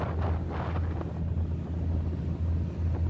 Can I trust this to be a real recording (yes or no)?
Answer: yes